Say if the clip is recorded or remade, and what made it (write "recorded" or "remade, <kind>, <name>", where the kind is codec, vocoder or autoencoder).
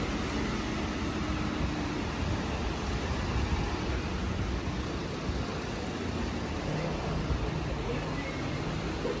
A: recorded